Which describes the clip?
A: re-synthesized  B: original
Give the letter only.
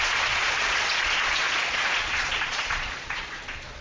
A